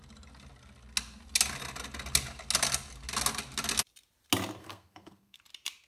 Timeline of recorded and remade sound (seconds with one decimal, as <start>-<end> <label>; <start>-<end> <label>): 0.0-4.6 recorded; 4.6-5.4 remade; 5.4-5.9 recorded